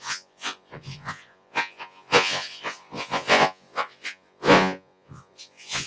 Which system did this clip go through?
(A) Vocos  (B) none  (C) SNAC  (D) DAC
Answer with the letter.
A